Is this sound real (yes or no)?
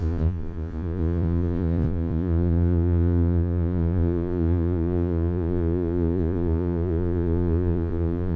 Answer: no